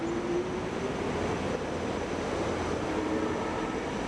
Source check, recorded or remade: recorded